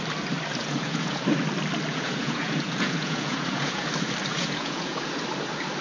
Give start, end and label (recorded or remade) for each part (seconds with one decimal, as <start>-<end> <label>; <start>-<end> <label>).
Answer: 0.0-0.6 recorded; 0.6-1.2 remade; 1.2-1.9 recorded; 1.9-3.9 remade; 3.9-4.3 recorded; 4.3-5.2 remade; 5.2-5.8 recorded